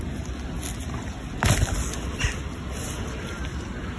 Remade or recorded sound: recorded